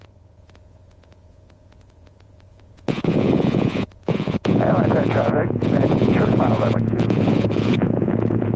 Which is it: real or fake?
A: fake